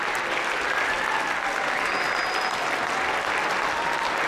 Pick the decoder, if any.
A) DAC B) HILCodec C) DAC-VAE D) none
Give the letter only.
D